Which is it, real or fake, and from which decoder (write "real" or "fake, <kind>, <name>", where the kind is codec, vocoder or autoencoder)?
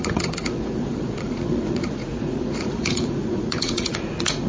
fake, vocoder, Vocos